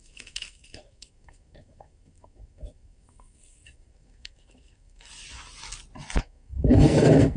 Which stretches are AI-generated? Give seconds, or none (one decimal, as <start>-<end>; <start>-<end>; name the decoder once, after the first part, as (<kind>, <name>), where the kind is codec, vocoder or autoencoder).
0.0-5.1 (codec, SNAC); 6.2-7.4